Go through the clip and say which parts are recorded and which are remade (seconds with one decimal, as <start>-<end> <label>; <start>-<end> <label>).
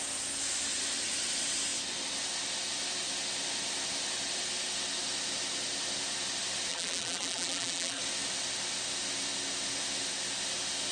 0.0-6.7 recorded; 6.7-8.0 remade; 8.0-10.9 recorded